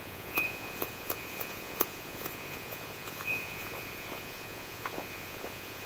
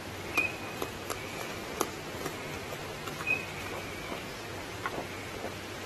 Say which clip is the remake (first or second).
first